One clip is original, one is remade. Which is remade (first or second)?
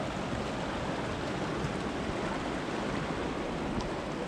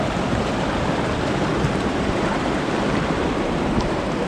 second